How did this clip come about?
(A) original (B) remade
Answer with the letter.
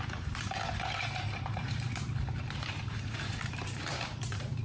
B